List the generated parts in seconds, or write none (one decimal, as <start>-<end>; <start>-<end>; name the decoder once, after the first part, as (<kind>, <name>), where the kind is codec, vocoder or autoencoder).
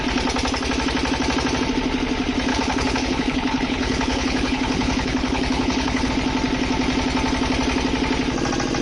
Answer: 2.5-6.1 (codec, HILCodec)